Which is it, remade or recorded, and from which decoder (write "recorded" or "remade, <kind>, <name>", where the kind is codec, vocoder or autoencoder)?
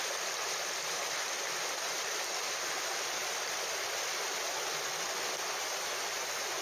remade, vocoder, BigVGAN v2